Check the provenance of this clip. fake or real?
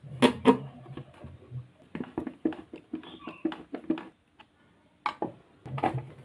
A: real